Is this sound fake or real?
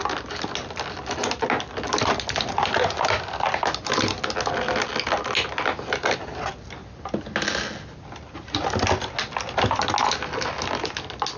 real